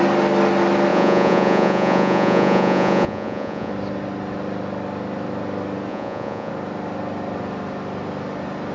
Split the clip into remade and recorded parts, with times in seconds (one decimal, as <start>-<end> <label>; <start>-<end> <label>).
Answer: 0.0-0.9 recorded; 0.9-3.7 remade; 3.7-5.9 recorded; 5.9-6.5 remade; 6.5-8.7 recorded